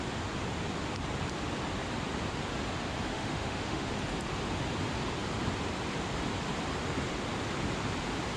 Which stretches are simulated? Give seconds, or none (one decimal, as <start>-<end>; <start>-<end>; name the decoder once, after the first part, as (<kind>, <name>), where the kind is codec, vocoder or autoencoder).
3.1-3.9 (autoencoder, DAC-VAE)